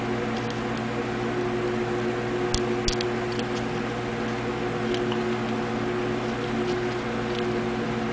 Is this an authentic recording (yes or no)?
yes